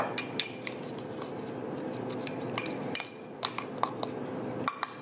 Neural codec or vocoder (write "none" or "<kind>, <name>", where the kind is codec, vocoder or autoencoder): none